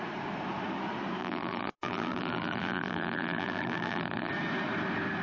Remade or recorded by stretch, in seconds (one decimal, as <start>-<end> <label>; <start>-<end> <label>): 0.0-1.2 recorded; 1.2-4.3 remade; 4.3-5.2 recorded